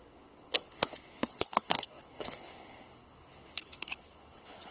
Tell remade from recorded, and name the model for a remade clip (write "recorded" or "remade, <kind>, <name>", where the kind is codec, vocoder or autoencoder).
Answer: remade, codec, HILCodec